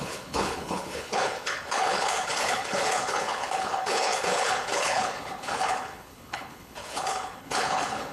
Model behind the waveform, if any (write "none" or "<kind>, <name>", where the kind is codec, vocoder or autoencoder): codec, HILCodec